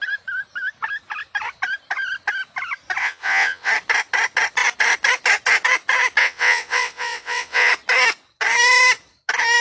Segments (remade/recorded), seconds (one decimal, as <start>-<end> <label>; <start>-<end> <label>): 0.0-3.0 recorded; 3.0-3.7 remade; 3.7-6.2 recorded; 6.2-7.7 remade; 7.7-9.6 recorded